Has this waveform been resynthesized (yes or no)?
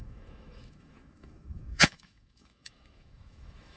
yes